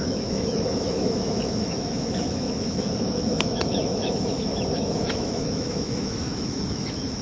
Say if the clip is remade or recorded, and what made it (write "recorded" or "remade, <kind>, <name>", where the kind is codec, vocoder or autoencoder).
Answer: remade, autoencoder, DAC-VAE